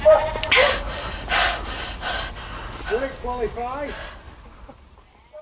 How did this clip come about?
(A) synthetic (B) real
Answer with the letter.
B